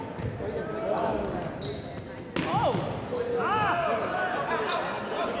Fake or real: real